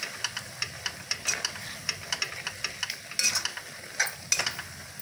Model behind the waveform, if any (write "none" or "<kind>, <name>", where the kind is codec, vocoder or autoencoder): none